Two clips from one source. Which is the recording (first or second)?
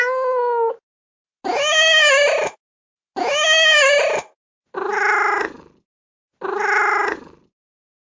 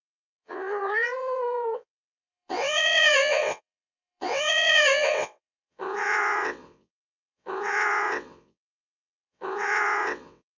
first